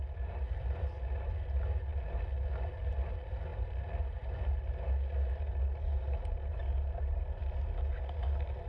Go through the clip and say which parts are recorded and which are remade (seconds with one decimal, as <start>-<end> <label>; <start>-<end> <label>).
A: 0.0-8.7 recorded